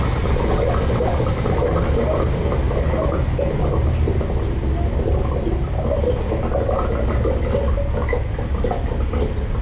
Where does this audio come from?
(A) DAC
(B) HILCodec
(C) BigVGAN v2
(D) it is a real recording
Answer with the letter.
D